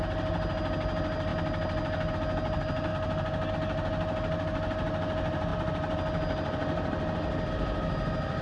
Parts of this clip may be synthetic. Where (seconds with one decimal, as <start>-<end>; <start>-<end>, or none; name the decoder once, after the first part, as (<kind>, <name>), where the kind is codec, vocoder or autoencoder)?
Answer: none